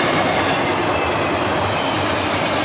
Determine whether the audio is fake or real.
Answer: real